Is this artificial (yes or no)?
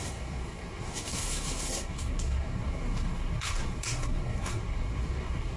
yes